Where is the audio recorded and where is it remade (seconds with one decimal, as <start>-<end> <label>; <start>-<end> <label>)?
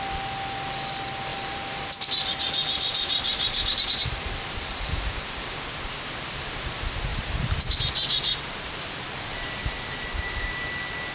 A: 0.0-1.3 recorded; 1.3-5.6 remade; 5.6-9.6 recorded; 9.6-10.5 remade; 10.5-11.1 recorded